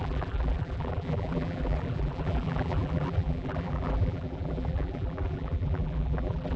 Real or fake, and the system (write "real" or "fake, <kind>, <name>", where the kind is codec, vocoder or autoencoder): fake, vocoder, BigVGAN v2